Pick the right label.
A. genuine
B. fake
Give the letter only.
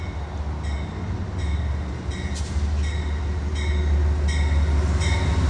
A